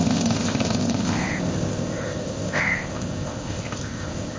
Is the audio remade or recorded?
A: remade